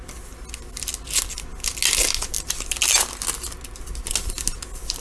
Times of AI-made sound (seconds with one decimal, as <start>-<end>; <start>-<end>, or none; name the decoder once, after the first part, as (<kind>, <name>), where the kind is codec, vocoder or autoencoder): none